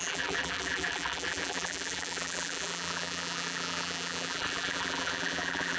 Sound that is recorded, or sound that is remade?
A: remade